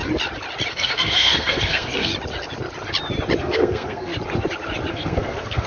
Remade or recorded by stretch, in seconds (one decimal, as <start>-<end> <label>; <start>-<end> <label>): 0.0-0.7 recorded; 0.7-2.1 remade; 2.1-3.4 recorded; 3.4-4.1 remade; 4.1-4.9 recorded; 4.9-5.7 remade